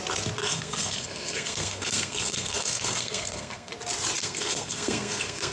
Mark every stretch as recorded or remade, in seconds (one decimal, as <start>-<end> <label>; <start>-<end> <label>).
0.0-0.4 recorded; 0.4-3.7 remade; 3.7-4.2 recorded; 4.2-5.5 remade